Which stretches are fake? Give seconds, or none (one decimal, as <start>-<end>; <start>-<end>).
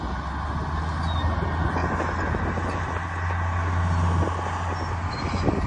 none